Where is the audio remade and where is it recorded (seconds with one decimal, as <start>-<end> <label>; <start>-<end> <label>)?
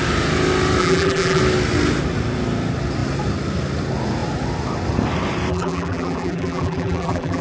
0.0-0.8 recorded; 0.8-1.4 remade; 1.4-5.5 recorded; 5.5-7.4 remade